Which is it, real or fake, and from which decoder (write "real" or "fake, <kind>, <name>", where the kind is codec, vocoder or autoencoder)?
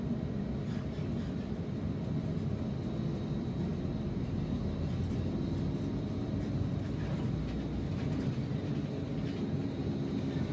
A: real